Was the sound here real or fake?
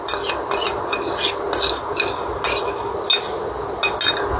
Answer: real